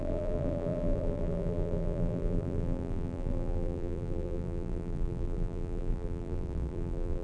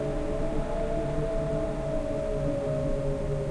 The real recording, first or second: second